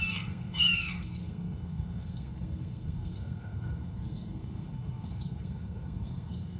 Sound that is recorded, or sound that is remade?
remade